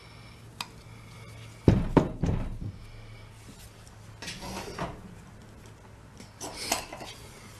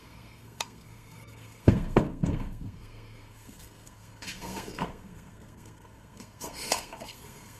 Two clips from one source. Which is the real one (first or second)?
first